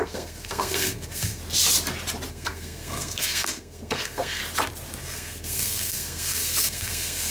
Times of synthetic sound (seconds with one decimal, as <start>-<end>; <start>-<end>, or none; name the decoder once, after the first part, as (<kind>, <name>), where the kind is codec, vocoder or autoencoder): 0.0-1.4 (codec, SNAC); 2.3-4.4; 5.0-7.3